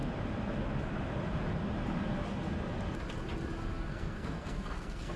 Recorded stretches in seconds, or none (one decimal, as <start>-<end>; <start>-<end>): 0.0-3.9